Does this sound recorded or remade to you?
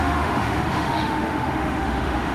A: remade